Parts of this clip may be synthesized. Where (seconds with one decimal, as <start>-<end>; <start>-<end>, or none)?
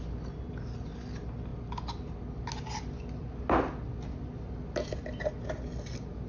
none